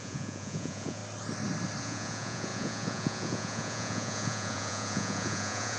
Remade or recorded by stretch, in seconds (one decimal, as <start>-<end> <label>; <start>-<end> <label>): 0.0-1.0 remade; 1.0-1.8 recorded; 1.8-5.8 remade

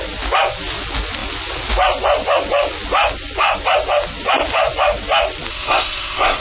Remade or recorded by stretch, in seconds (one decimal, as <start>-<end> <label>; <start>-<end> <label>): 0.0-5.5 recorded; 5.5-6.4 remade

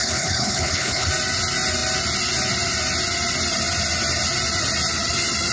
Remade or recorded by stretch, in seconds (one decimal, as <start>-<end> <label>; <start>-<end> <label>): 0.0-1.1 remade; 1.1-5.5 recorded

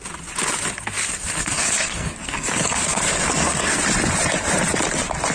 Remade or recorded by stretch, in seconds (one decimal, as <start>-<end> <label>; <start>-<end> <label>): 0.0-1.1 recorded; 1.1-3.8 remade; 3.8-5.3 recorded

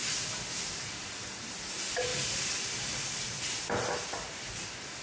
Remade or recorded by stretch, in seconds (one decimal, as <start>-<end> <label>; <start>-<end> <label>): 0.0-1.5 remade; 1.5-2.1 recorded; 2.1-4.0 remade; 4.0-5.0 recorded

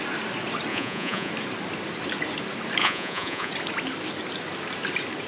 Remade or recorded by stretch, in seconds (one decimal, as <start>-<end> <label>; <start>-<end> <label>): 0.0-0.7 recorded; 0.7-1.3 remade; 1.3-2.8 recorded; 2.8-3.5 remade; 3.5-5.3 recorded

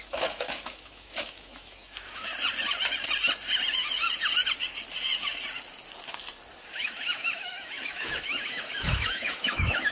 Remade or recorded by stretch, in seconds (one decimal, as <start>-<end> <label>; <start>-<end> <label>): 0.0-2.3 remade; 2.3-6.7 recorded; 6.7-9.9 remade

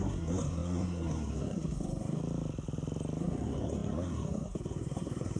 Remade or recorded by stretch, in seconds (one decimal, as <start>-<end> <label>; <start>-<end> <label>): 0.0-2.2 remade; 2.2-3.2 recorded; 3.2-5.4 remade